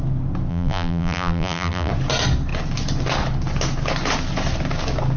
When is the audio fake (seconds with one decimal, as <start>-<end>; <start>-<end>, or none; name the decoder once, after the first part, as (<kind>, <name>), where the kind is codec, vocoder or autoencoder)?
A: 0.5-1.9 (vocoder, BigVGAN v2)